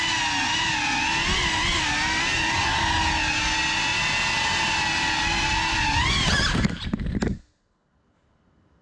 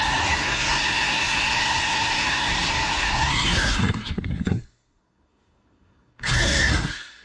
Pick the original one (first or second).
first